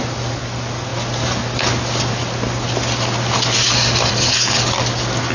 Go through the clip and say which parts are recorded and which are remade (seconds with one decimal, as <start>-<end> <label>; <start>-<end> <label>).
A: 0.0-5.3 recorded

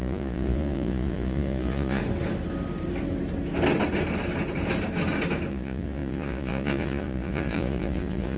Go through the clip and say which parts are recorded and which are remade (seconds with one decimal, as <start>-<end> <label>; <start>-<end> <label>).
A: 0.0-2.0 remade; 2.0-5.5 recorded; 5.5-8.4 remade

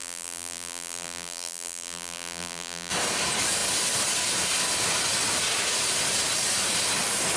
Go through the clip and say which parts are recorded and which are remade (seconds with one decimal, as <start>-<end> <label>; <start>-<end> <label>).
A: 0.0-2.9 remade; 2.9-7.4 recorded

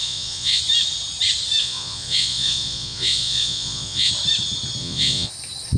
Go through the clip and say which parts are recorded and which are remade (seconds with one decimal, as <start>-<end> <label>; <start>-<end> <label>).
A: 0.0-0.6 remade; 0.6-1.6 recorded; 1.6-4.1 remade; 4.1-4.8 recorded; 4.8-5.3 remade; 5.3-5.8 recorded

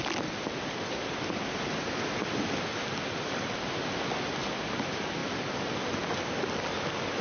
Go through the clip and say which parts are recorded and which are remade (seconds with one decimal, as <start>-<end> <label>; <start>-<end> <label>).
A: 0.0-7.2 recorded

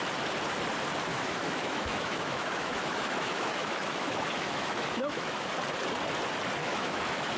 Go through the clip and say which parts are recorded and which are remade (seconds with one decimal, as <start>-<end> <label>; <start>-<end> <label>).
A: 0.0-1.1 recorded; 1.1-5.5 remade; 5.5-6.6 recorded; 6.6-7.4 remade

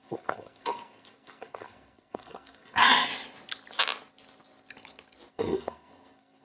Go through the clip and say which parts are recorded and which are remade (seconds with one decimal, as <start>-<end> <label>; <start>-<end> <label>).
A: 0.0-3.1 remade; 3.1-5.3 recorded; 5.3-6.4 remade

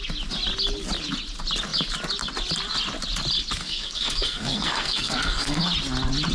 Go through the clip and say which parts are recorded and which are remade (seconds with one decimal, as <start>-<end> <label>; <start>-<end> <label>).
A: 0.0-3.6 recorded; 3.6-5.6 remade; 5.6-6.3 recorded